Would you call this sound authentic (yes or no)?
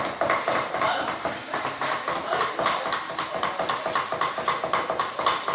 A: yes